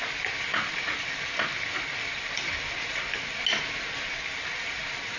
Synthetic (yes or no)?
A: no